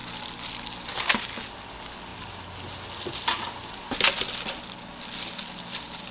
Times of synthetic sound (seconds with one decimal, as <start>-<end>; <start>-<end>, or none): none